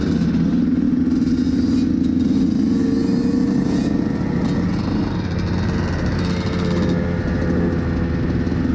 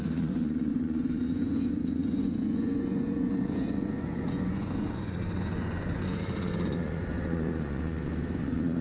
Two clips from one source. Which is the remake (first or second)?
second